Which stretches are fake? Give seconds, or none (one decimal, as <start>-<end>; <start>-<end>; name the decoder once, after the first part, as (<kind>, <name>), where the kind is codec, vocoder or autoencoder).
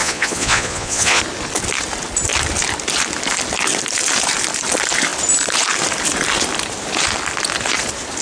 0.0-1.2 (vocoder, Vocos)